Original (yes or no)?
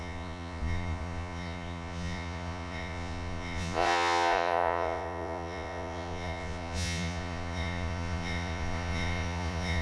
no